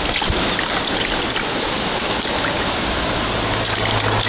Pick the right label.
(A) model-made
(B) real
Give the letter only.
B